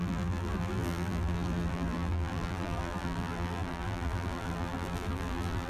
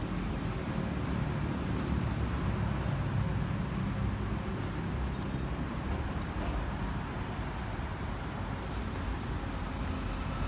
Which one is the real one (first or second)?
second